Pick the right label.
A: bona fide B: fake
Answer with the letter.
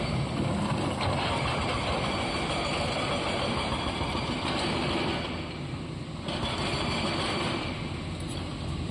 A